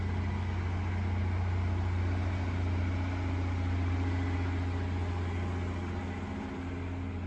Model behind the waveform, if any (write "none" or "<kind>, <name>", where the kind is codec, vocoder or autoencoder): none